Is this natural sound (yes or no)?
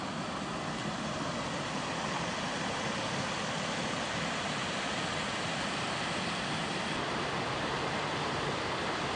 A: yes